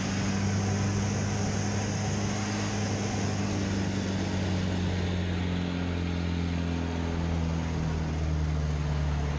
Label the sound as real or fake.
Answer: real